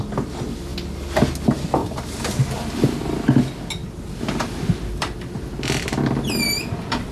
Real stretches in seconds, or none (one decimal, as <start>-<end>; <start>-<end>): 0.0-1.8; 2.8-3.8